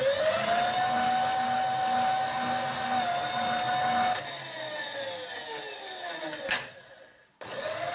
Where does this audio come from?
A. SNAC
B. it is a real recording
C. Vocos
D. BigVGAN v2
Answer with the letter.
B